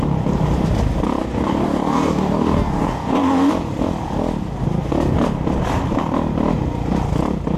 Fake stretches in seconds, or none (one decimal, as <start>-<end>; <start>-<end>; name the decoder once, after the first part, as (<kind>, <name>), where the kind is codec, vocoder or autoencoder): 1.2-3.5 (codec, DAC)